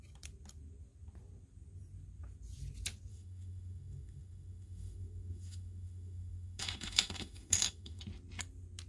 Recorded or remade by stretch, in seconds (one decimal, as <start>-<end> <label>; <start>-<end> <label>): 0.0-3.1 recorded; 3.1-8.0 remade; 8.0-8.9 recorded